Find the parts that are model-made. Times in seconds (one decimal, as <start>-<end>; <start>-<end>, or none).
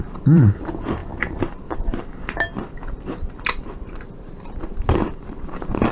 0.0-5.9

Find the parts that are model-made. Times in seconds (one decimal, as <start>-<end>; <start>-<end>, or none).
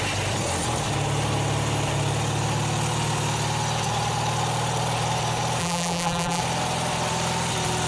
5.6-6.4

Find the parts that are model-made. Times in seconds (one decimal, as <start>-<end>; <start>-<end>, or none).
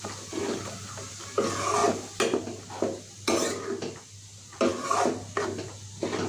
none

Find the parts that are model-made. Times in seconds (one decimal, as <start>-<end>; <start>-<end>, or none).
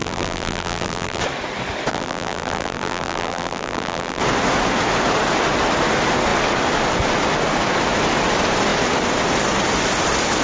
0.0-1.2; 1.9-4.2